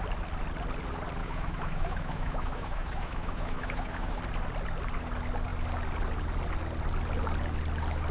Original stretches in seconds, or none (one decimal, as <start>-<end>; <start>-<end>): 0.0-1.2; 4.2-8.1